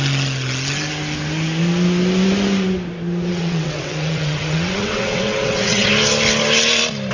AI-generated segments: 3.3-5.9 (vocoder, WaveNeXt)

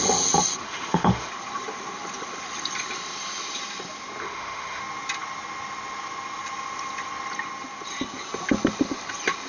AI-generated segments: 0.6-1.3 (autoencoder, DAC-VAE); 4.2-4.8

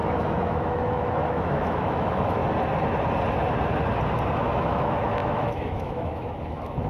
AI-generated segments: 0.0-2.4 (autoencoder, DAC-VAE); 4.4-6.9